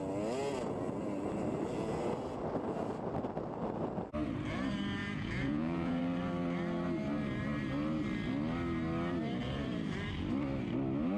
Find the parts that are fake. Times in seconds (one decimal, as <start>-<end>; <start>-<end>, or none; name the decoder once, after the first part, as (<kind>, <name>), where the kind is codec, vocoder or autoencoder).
5.0-6.0 (vocoder, Vocos)